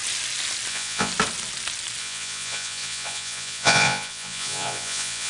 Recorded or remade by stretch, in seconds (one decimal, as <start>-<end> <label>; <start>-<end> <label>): 0.0-0.7 recorded; 0.7-1.1 remade; 1.1-2.0 recorded; 2.0-5.3 remade

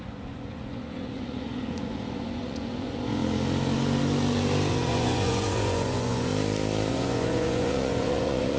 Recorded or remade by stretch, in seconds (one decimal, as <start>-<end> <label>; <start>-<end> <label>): 0.0-3.2 remade; 3.2-4.7 recorded; 4.7-6.3 remade; 6.3-6.9 recorded; 6.9-8.6 remade

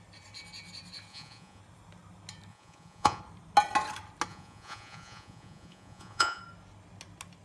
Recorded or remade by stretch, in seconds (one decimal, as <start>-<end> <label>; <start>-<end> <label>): 0.0-1.1 recorded; 1.1-1.6 remade; 1.6-2.5 recorded; 2.5-3.2 remade; 3.2-4.3 recorded; 4.3-6.4 remade; 6.4-7.4 recorded